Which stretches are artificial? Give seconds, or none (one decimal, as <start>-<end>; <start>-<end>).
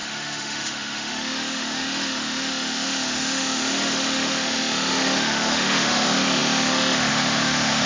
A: 0.0-7.9